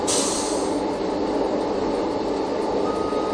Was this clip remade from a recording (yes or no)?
no